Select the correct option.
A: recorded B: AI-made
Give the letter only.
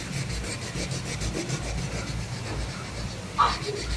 A